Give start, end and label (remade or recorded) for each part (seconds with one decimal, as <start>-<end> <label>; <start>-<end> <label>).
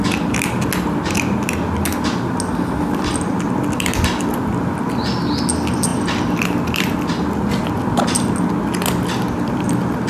0.0-10.1 recorded